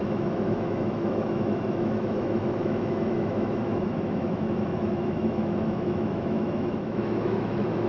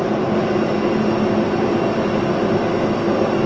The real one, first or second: second